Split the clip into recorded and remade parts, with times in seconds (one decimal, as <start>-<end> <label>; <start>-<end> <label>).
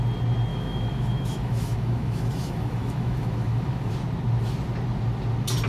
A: 0.0-0.5 recorded; 0.5-3.9 remade; 3.9-5.7 recorded